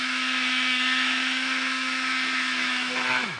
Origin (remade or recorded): remade